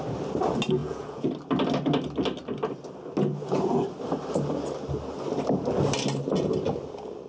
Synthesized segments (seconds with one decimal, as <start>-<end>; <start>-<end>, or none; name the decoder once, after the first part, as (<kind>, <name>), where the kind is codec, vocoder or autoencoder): 0.8-1.3 (vocoder, Vocos)